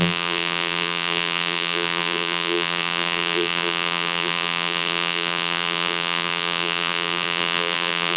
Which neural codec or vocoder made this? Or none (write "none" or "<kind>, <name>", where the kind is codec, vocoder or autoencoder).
vocoder, BigVGAN v2